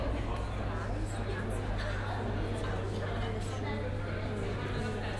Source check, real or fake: real